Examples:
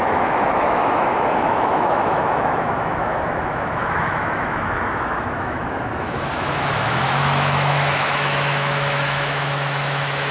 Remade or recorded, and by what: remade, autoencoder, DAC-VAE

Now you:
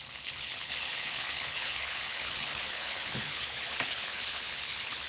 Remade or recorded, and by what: remade, codec, HILCodec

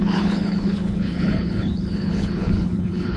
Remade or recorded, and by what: remade, codec, HILCodec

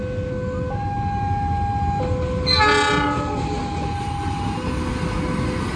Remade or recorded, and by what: recorded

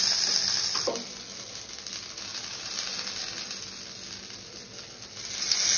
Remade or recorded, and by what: recorded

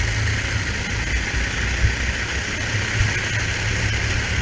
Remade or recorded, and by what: recorded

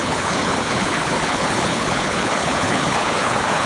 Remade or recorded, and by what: remade, codec, HILCodec